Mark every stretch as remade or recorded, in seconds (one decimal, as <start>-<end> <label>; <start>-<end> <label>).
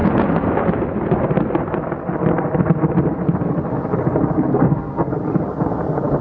0.0-4.5 recorded; 4.5-5.1 remade; 5.1-6.2 recorded